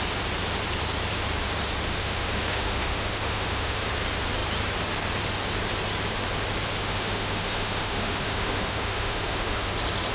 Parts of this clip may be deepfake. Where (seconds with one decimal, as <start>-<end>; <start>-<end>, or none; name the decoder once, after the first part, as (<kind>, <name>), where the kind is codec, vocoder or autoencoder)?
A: 2.0-3.9 (autoencoder, DAC-VAE); 6.8-9.7